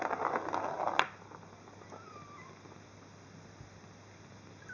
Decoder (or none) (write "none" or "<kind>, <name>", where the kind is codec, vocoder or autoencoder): none